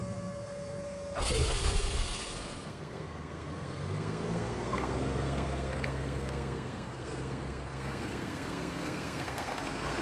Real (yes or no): no